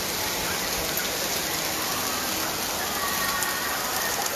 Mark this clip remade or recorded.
recorded